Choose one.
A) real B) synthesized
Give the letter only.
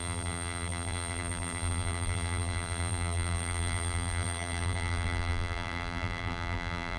B